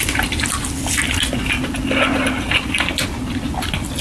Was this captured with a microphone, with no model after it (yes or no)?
yes